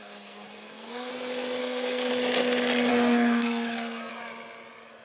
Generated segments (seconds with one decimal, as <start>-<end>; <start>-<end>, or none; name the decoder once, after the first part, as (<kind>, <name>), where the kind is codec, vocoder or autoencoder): 0.0-1.1 (codec, SNAC); 1.6-2.1; 2.9-4.1